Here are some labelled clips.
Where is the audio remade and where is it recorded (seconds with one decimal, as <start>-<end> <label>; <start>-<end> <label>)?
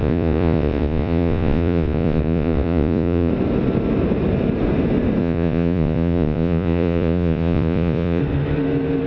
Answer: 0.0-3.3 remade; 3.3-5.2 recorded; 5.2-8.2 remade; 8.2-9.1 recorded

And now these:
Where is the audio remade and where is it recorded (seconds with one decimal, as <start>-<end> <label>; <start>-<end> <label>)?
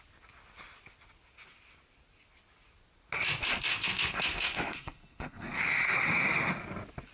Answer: 0.0-3.7 recorded; 3.7-5.8 remade; 5.8-7.1 recorded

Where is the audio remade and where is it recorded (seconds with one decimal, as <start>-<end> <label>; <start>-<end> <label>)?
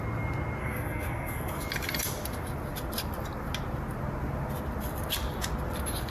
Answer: 0.0-0.6 recorded; 0.6-1.6 remade; 1.6-6.1 recorded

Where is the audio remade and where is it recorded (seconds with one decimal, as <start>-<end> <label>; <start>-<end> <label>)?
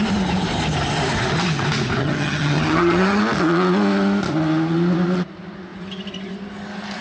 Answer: 0.0-2.0 recorded; 2.0-3.2 remade; 3.2-7.0 recorded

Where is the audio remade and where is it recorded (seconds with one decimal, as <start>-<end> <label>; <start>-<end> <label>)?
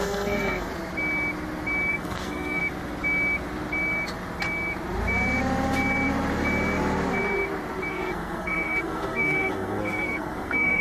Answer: 0.0-0.7 remade; 0.7-1.9 recorded; 1.9-2.6 remade; 2.6-7.9 recorded; 7.9-10.8 remade